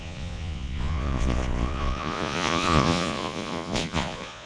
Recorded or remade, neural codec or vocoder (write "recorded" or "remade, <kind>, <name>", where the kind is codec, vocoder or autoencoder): remade, vocoder, Vocos